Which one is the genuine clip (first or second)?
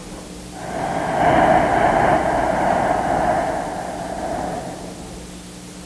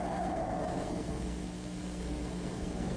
first